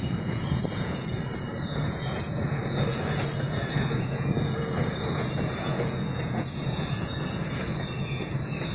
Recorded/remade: remade